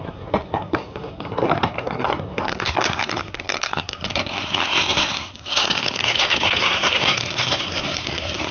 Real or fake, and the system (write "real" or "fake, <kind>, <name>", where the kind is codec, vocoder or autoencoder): fake, codec, SNAC